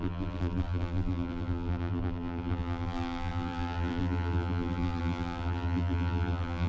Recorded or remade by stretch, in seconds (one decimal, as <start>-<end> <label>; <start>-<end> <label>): 0.0-6.7 remade